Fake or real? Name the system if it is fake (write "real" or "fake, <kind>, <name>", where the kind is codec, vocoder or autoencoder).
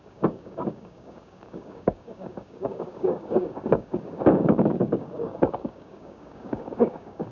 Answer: fake, codec, DAC